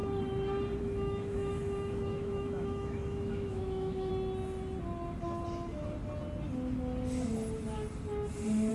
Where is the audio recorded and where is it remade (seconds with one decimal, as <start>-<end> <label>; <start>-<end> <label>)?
0.0-0.8 recorded; 0.8-4.1 remade; 4.1-8.7 recorded